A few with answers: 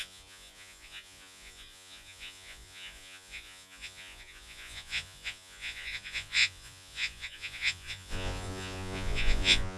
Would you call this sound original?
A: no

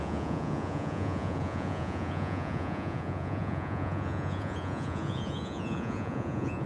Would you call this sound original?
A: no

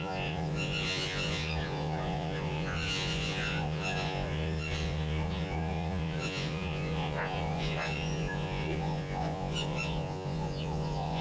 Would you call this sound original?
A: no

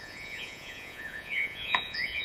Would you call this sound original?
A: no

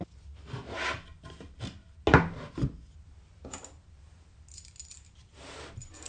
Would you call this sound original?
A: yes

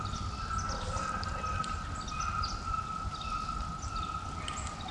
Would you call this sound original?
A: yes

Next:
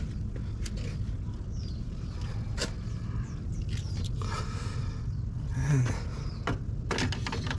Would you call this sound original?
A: yes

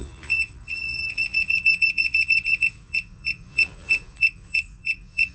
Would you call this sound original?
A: no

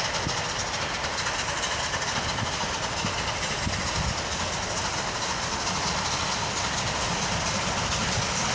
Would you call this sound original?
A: yes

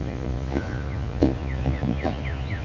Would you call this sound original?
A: no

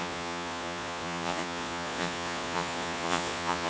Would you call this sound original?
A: no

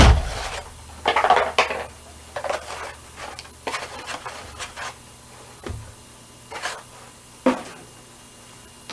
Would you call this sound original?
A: yes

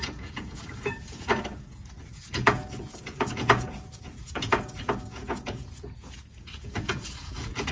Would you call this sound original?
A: no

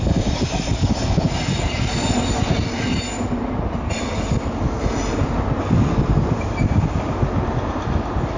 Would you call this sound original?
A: yes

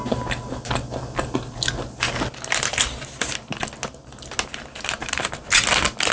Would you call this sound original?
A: yes